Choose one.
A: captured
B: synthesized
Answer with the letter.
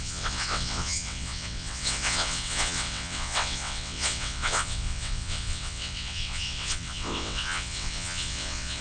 B